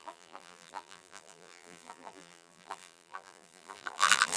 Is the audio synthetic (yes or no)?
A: yes